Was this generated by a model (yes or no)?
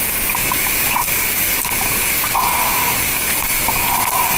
yes